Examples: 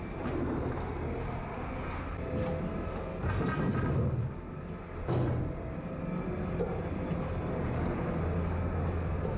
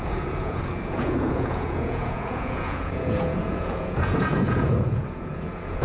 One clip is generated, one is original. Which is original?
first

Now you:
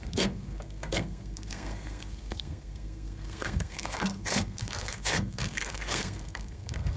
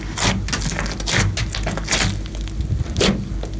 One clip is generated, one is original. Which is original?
second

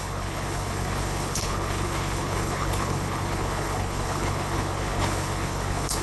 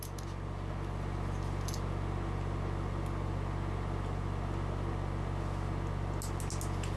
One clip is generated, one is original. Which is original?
second